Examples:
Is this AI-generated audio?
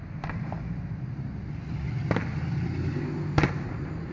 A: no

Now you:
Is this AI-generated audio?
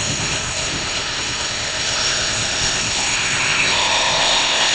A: yes